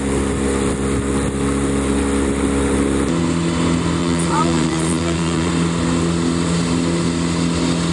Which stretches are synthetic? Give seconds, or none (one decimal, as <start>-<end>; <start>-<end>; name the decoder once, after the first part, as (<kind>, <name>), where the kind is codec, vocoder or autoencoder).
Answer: 4.0-5.5 (vocoder, Vocos)